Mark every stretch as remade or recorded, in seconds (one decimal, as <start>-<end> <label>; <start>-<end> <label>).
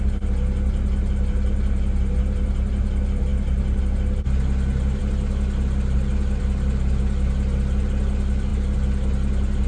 0.0-9.7 recorded